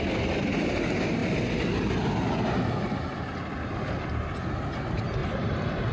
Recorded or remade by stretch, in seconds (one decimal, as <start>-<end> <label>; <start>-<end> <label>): 0.0-5.2 recorded; 5.2-5.9 remade